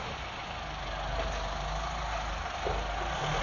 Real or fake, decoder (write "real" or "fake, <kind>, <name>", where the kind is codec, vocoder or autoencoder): real